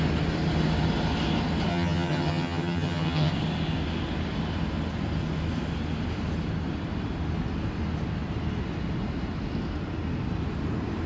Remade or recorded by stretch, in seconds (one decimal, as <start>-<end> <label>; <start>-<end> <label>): 0.0-1.7 recorded; 1.7-3.3 remade; 3.3-11.1 recorded